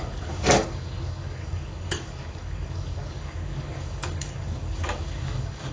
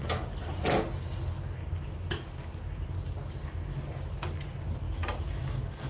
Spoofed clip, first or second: first